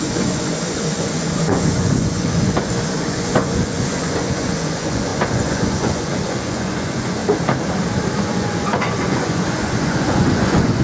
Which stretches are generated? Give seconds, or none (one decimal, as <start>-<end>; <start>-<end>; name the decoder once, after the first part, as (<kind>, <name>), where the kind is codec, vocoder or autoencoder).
0.0-7.2 (vocoder, Vocos); 8.2-10.8